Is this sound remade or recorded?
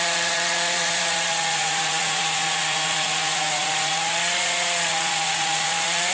remade